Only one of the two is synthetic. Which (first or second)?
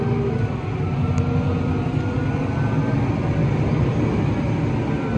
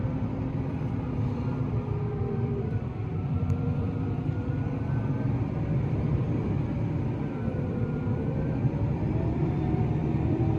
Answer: second